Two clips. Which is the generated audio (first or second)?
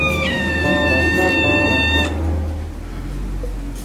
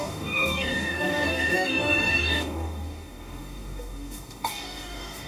second